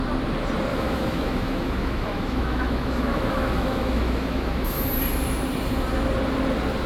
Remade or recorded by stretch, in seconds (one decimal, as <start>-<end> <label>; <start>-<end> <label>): 0.0-0.7 recorded; 0.7-4.8 remade; 4.8-6.9 recorded